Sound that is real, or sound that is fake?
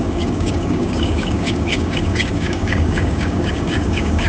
fake